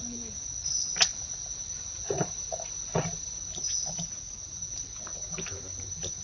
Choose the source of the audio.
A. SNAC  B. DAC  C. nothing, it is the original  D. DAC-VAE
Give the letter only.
C